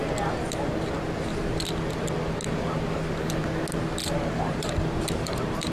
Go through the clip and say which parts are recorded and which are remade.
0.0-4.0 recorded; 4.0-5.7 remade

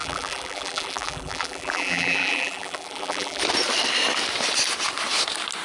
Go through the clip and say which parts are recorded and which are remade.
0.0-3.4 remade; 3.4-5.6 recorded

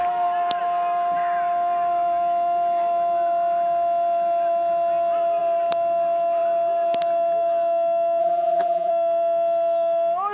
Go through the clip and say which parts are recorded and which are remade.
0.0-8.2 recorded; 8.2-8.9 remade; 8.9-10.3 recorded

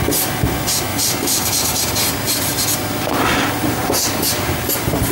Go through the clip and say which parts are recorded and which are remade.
0.0-0.9 recorded; 0.9-2.6 remade; 2.6-5.1 recorded